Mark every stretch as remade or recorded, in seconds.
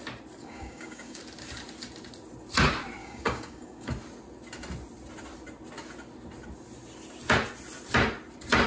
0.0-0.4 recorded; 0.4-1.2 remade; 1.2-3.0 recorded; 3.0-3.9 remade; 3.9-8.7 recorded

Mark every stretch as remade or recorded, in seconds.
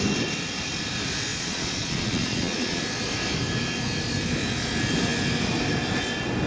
0.0-1.3 recorded; 1.3-2.8 remade; 2.8-6.5 recorded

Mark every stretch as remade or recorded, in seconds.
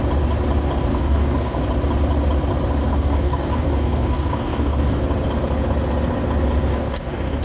0.0-0.9 recorded; 0.9-1.6 remade; 1.6-2.9 recorded; 2.9-5.0 remade; 5.0-6.7 recorded; 6.7-7.4 remade